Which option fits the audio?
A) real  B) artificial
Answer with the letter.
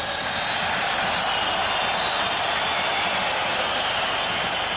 A